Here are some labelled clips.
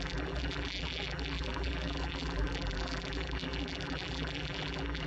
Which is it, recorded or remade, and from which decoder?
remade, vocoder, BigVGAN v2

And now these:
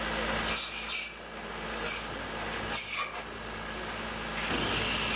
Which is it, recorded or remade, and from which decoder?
recorded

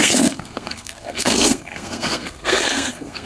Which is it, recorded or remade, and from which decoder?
remade, codec, SNAC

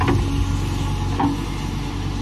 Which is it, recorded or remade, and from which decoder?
recorded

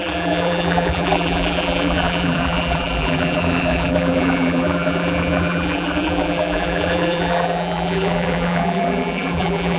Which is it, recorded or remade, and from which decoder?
remade, vocoder, BigVGAN v2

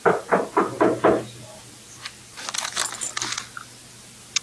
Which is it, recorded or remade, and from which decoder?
recorded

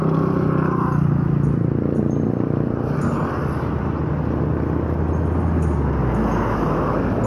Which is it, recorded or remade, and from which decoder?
recorded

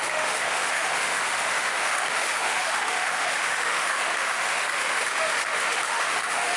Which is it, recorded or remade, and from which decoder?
remade, autoencoder, DAC-VAE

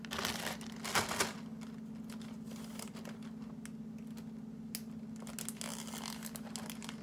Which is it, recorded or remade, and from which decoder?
recorded